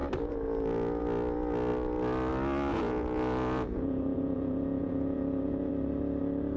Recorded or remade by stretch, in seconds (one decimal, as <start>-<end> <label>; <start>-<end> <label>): 0.0-2.7 recorded; 2.7-5.7 remade; 5.7-6.6 recorded